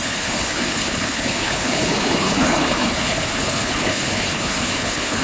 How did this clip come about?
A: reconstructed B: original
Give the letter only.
A